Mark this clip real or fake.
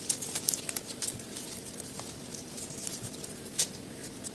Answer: real